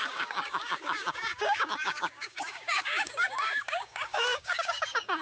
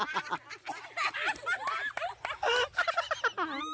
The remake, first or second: first